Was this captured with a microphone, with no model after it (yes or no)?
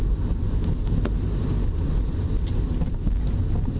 yes